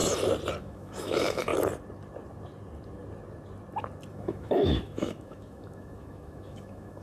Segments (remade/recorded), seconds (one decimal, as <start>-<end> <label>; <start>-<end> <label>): 0.0-0.6 recorded; 0.6-1.5 remade; 1.5-4.1 recorded; 4.1-7.0 remade